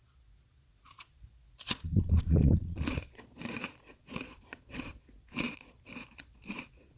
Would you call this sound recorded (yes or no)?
no